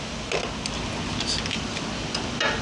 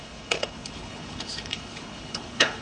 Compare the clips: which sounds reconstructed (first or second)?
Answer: second